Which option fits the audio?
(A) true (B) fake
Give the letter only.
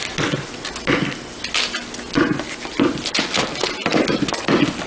A